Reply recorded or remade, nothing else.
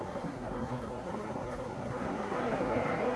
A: remade